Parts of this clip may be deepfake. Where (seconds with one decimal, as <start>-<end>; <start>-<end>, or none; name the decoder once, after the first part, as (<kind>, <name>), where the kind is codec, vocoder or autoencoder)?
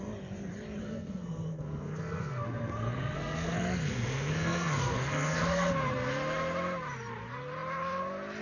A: 0.8-5.7 (codec, SNAC)